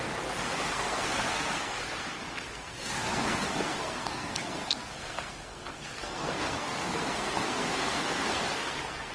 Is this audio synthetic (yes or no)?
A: yes